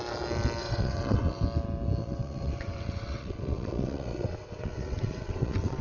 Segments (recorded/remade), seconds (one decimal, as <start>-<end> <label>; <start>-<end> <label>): 0.0-0.6 recorded; 0.6-1.4 remade; 1.4-2.0 recorded; 2.0-5.8 remade